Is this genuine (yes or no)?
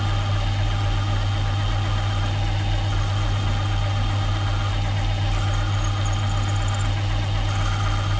yes